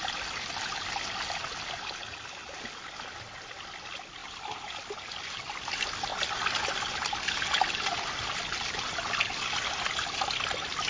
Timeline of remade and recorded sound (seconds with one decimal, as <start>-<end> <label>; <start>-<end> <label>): 0.0-10.9 recorded